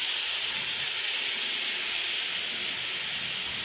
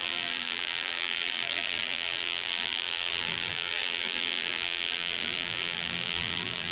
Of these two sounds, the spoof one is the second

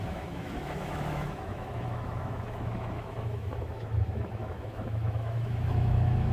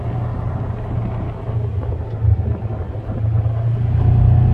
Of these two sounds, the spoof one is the first